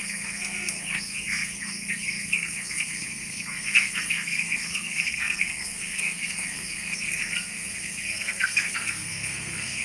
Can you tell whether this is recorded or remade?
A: remade